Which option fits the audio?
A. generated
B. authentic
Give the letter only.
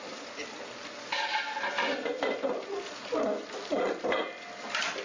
B